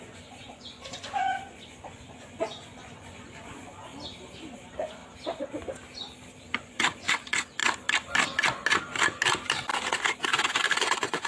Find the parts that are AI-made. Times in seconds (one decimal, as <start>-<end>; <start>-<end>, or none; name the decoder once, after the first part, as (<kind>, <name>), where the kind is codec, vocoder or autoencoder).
0.0-3.9 (vocoder, Vocos); 4.6-5.0; 6.4-7.6; 10.7-11.3